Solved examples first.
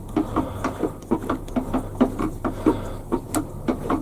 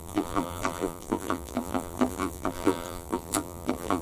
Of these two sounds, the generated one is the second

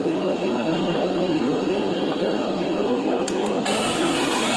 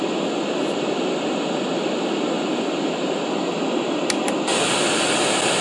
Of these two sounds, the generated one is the first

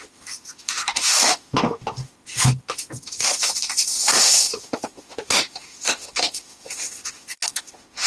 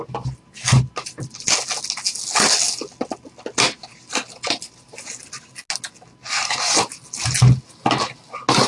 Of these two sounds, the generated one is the first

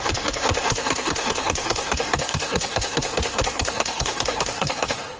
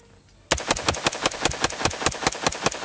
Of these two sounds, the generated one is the first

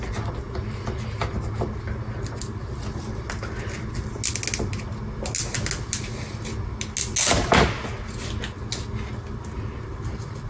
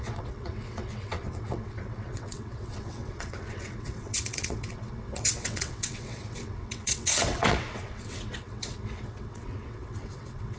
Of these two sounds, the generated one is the second